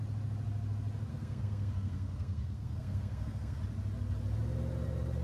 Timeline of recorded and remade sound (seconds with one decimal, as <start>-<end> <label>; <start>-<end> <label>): 0.0-1.1 recorded; 1.1-3.6 remade; 3.6-5.2 recorded